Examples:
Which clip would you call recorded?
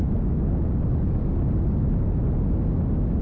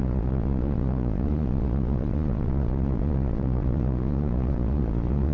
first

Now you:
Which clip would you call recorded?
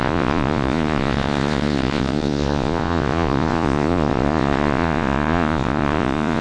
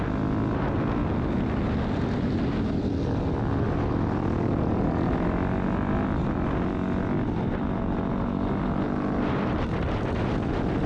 second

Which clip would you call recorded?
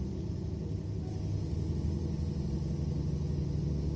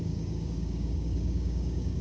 first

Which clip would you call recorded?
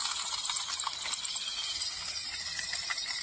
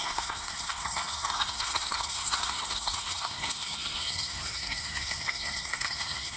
first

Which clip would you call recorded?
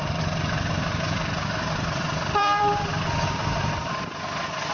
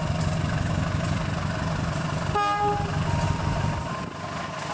second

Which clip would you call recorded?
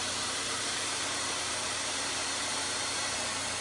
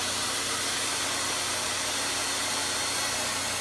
second